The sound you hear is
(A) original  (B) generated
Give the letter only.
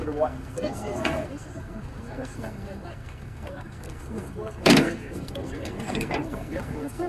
B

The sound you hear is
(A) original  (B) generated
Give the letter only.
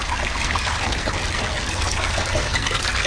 B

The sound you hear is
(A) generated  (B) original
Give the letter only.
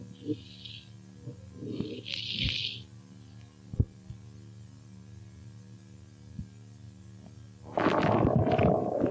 B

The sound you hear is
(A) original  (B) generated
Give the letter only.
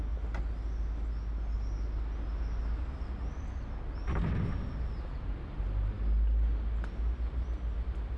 A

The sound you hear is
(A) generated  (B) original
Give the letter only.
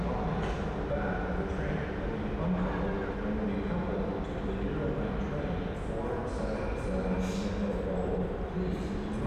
B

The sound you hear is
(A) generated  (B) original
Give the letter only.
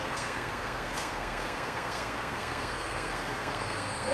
A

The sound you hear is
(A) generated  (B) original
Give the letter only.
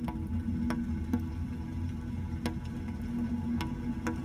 B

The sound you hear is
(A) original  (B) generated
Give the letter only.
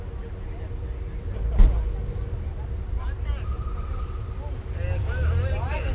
A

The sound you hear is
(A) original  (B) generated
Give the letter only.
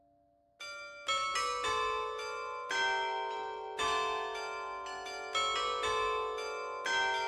A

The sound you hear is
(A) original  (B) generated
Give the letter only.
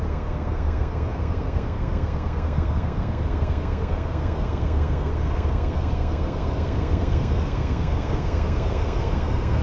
B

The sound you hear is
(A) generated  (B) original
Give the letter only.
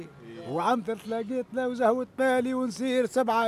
B